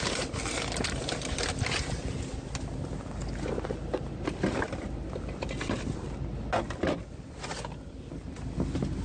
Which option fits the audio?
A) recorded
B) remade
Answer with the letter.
A